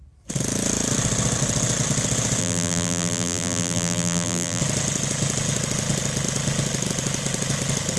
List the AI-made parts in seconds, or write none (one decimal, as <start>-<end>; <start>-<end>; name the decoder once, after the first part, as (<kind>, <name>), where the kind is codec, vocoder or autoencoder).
2.4-4.6 (vocoder, BigVGAN v2)

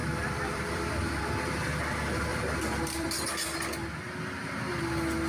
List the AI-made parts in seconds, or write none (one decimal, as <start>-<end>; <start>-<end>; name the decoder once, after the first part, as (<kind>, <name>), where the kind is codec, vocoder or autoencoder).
0.0-1.2 (vocoder, BigVGAN v2); 2.3-3.2